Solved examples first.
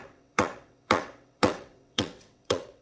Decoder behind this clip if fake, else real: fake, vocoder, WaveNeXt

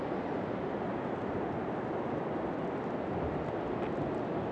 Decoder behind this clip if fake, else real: real